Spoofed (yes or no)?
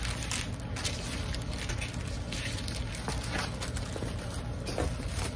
no